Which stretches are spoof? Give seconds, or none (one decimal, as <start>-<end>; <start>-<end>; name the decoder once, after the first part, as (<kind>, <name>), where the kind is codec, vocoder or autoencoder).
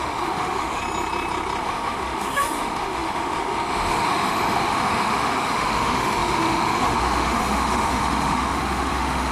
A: 0.0-0.8 (autoencoder, DAC-VAE); 1.6-9.3